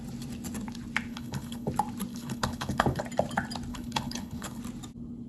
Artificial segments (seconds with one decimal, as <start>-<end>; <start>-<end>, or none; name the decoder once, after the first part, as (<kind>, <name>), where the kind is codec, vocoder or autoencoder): 1.1-1.7 (codec, HILCodec); 2.1-3.0; 3.7-4.6

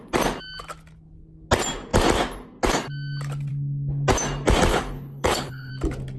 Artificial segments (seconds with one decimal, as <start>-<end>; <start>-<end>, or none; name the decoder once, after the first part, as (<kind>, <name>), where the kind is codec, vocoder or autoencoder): 4.7-5.7 (codec, HILCodec)

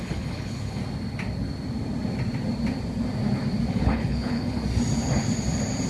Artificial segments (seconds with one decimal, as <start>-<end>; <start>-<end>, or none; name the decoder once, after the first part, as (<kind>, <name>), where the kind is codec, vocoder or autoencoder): 0.0-0.8 (codec, HILCodec); 3.7-4.6

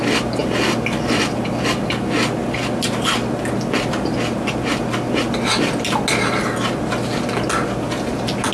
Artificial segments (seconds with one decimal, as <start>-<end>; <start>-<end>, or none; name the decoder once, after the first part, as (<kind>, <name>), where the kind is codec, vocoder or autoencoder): none

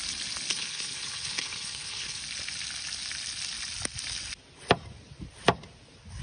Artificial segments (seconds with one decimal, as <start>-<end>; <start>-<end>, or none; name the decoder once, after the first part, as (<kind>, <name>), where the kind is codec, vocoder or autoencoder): 0.5-2.2 (codec, HILCodec)

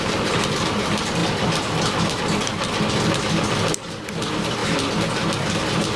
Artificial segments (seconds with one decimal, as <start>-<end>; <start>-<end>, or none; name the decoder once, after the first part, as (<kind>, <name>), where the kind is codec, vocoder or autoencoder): none

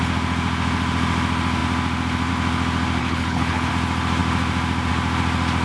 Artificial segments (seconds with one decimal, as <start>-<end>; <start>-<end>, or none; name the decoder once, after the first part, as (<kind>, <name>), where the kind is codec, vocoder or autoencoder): 3.0-3.7 (codec, HILCodec)

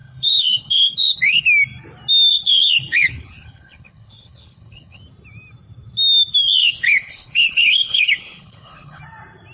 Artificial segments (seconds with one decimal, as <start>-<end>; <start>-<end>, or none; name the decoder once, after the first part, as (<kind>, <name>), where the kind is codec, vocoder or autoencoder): 0.0-1.4 (codec, HILCodec); 2.3-5.0; 6.6-9.0